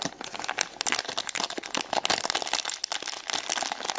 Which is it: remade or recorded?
recorded